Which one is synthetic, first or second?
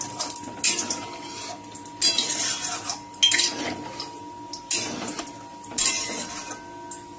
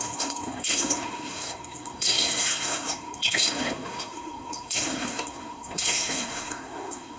second